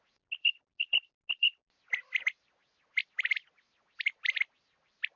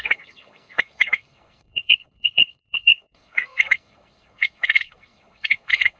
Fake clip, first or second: second